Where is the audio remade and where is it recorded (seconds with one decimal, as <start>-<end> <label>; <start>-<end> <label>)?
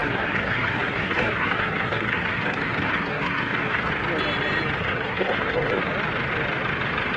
0.0-3.9 remade; 3.9-4.8 recorded; 4.8-5.9 remade; 5.9-7.2 recorded